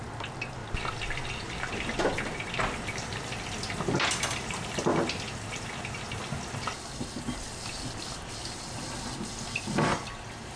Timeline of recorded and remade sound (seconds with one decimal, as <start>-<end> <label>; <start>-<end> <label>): 0.0-10.6 recorded